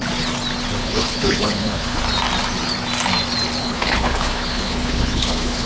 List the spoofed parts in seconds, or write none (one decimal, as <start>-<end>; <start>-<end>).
0.8-2.0; 3.6-5.7